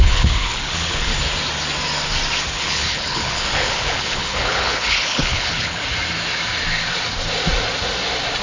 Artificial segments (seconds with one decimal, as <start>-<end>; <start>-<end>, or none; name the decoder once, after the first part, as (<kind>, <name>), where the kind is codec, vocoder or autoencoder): 0.0-1.1 (codec, HILCodec); 2.5-5.8